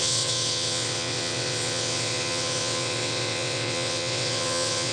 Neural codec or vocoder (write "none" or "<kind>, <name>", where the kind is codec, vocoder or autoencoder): vocoder, WaveNeXt